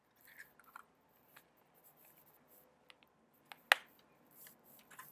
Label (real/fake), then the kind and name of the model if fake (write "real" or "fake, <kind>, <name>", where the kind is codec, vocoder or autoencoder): real